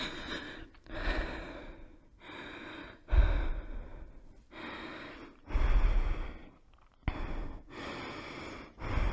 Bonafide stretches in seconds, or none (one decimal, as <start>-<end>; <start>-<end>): 0.0-9.1